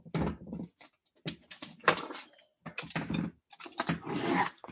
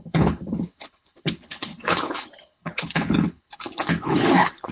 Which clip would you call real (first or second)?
first